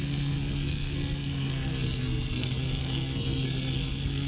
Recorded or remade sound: remade